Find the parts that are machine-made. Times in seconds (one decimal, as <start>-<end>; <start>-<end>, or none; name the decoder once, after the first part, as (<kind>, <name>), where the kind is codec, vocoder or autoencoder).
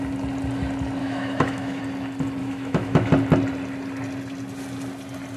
1.0-1.8 (autoencoder, DAC-VAE); 2.4-3.1